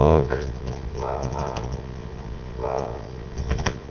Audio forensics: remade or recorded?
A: remade